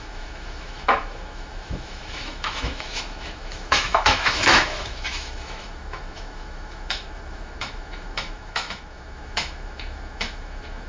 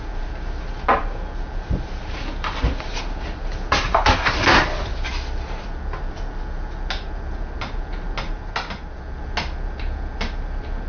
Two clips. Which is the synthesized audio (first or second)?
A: first